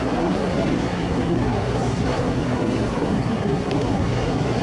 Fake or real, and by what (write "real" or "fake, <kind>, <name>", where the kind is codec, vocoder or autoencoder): fake, codec, SNAC